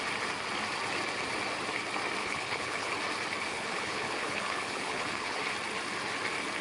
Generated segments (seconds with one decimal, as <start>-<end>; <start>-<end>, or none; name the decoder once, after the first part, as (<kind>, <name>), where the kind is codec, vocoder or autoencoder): 2.2-2.9 (codec, HILCodec); 3.5-5.4